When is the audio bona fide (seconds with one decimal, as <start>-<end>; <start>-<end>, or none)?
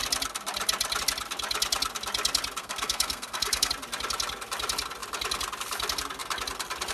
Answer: 0.0-2.6; 3.7-6.9